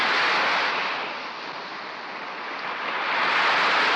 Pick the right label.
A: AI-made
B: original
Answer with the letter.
B